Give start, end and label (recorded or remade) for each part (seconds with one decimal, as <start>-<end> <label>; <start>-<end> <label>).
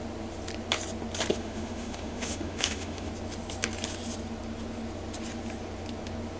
0.0-1.3 recorded; 1.3-3.1 remade; 3.1-6.4 recorded